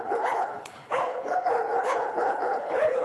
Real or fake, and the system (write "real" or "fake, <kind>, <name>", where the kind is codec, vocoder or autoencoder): fake, codec, HILCodec